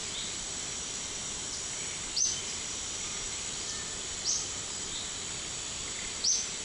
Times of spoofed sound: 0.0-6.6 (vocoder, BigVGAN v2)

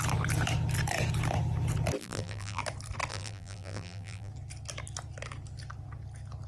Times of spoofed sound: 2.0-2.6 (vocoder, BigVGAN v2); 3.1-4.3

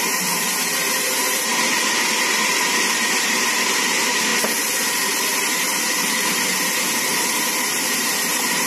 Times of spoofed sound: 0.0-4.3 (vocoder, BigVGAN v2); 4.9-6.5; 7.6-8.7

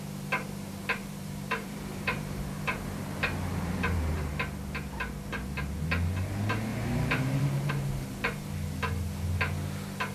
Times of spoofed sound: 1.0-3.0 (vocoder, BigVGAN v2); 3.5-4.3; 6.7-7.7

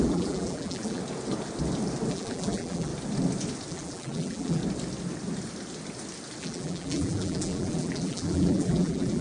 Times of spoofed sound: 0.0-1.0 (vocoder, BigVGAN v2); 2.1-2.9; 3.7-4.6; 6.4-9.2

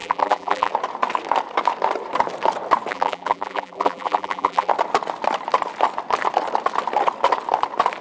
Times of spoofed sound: 0.0-0.7 (vocoder, BigVGAN v2); 2.9-4.7

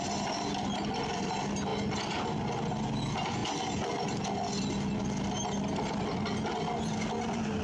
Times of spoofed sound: 1.7-2.3 (vocoder, BigVGAN v2)